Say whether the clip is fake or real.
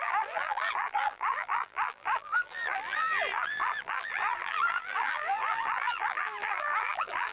fake